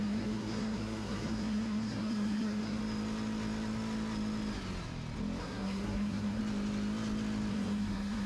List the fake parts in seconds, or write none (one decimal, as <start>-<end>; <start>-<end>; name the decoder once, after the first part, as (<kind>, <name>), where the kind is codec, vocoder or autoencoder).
0.0-2.8 (codec, SNAC); 5.4-6.4; 7.5-8.3